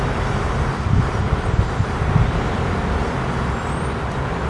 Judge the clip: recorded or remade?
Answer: remade